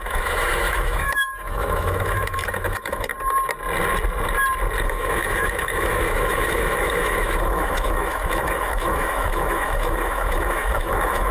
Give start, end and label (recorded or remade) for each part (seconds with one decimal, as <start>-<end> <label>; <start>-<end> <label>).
0.0-3.1 remade; 3.1-4.8 recorded; 4.8-11.3 remade